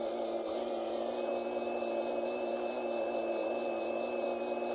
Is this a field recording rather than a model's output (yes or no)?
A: yes